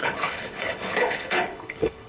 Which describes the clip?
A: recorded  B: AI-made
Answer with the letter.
B